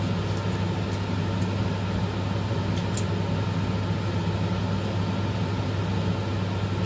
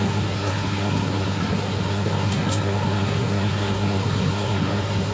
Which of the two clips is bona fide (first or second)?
first